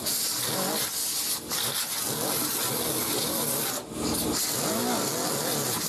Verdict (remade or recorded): recorded